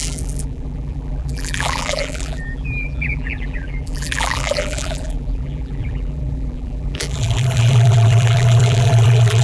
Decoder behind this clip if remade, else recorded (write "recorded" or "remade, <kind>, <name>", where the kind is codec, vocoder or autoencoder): remade, vocoder, BigVGAN v2